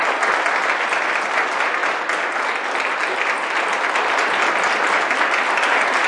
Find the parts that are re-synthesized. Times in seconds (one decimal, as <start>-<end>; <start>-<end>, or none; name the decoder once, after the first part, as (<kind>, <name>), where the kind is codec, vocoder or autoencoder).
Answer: none